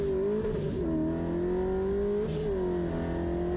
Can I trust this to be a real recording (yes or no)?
yes